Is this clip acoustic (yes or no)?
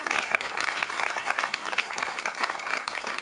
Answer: no